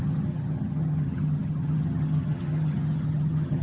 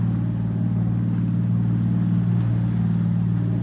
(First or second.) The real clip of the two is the second